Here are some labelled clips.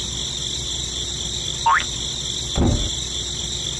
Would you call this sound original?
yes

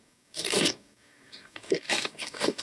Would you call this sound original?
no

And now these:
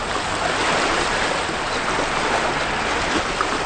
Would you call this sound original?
yes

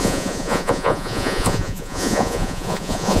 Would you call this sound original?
no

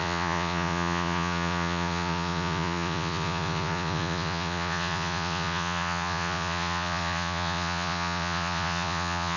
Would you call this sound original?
no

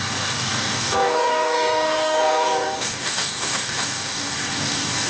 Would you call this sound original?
no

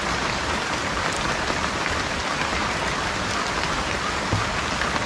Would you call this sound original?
yes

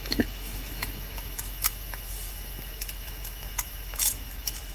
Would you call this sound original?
no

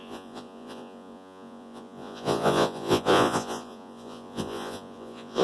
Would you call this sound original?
no